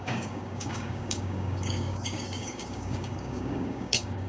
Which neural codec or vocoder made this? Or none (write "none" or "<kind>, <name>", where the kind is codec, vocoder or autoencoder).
codec, DAC